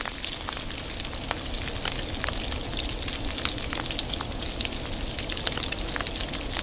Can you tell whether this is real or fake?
real